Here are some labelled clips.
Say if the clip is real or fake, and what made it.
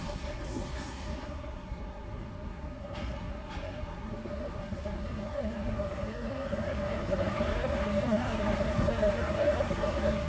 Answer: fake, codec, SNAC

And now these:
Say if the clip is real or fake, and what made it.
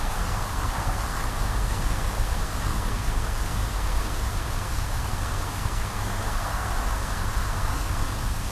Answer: fake, codec, SNAC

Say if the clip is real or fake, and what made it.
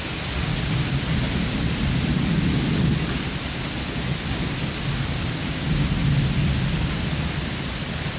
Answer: real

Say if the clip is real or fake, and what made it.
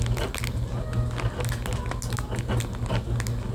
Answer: real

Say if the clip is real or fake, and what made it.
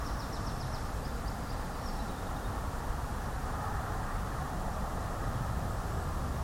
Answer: fake, vocoder, BigVGAN v2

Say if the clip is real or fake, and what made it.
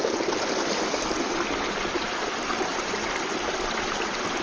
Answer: real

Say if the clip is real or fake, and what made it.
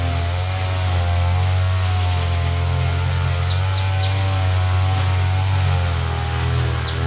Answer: real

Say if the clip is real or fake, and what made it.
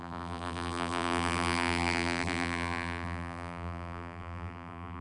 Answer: fake, vocoder, BigVGAN v2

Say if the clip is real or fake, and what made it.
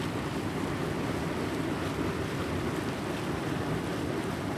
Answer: real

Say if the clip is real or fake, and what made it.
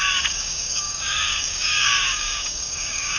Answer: fake, codec, DAC